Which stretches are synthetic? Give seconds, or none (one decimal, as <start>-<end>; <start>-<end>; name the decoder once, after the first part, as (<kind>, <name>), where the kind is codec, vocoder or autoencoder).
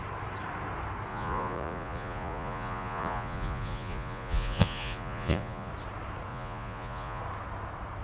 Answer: 1.1-5.7 (vocoder, Vocos); 6.3-7.2